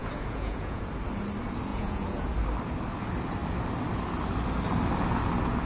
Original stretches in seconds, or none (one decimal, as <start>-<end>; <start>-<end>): 0.8-1.7; 2.3-5.7